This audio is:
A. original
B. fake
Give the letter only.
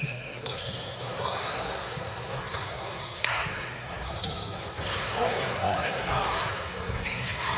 B